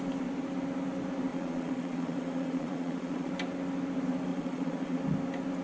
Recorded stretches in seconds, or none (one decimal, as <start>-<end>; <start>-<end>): 0.0-1.3; 3.3-4.3; 5.0-5.6